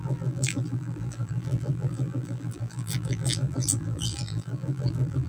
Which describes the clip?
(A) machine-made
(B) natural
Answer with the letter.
A